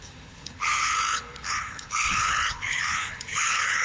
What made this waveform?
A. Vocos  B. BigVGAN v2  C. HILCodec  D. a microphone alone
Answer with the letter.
C